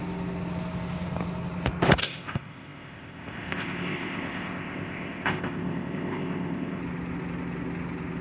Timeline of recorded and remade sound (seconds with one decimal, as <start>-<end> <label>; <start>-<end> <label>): 0.0-2.0 recorded; 2.0-6.8 remade; 6.8-8.2 recorded